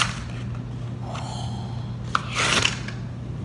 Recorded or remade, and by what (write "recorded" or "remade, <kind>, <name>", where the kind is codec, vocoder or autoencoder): recorded